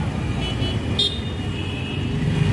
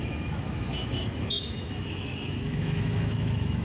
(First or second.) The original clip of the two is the first